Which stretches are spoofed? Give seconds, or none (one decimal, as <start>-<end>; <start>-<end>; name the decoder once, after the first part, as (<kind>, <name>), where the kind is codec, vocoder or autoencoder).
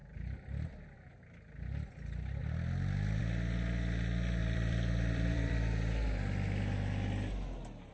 0.0-1.4 (vocoder, BigVGAN v2); 2.4-3.2; 4.4-5.5